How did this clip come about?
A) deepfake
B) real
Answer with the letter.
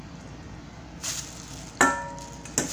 B